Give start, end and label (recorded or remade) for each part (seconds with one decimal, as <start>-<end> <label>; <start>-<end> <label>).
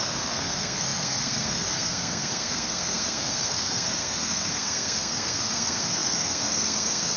0.0-7.2 remade